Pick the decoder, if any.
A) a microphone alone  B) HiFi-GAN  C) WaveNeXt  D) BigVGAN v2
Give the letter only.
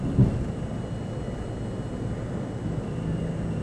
A